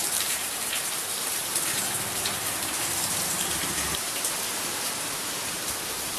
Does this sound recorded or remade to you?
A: remade